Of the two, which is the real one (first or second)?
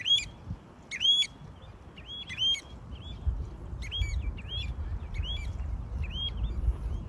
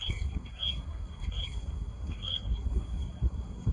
first